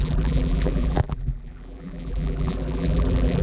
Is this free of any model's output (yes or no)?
no